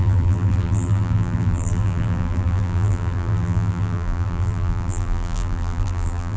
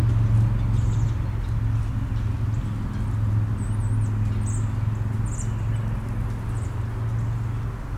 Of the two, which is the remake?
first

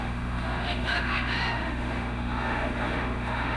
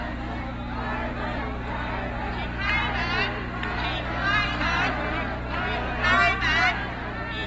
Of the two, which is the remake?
first